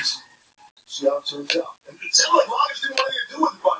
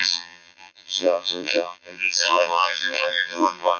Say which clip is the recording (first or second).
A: first